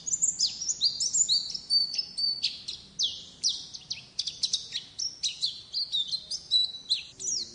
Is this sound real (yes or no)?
yes